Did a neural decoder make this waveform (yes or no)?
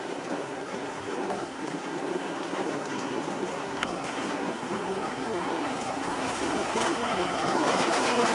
yes